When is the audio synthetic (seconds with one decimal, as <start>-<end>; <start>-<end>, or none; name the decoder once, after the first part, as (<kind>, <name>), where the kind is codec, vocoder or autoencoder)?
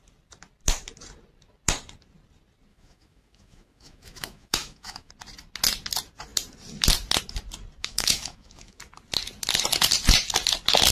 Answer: 2.7-5.1 (autoencoder, DAC-VAE); 7.8-8.8